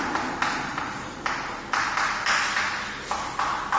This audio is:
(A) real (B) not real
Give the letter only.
A